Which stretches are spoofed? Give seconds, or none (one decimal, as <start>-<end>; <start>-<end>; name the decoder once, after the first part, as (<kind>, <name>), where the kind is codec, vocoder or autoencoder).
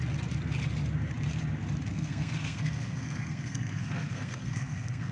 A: 1.9-5.1 (codec, SNAC)